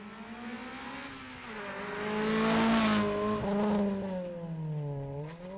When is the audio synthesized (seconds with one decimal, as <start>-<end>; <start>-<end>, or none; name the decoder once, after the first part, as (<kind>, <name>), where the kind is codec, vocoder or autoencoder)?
none